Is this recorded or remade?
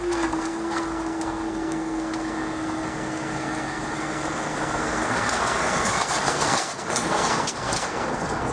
remade